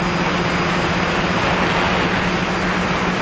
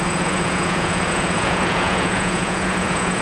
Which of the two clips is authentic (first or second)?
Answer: first